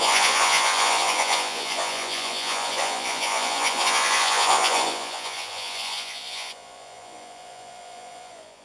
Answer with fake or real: fake